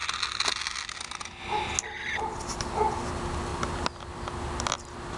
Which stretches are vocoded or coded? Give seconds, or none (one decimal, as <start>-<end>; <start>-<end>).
none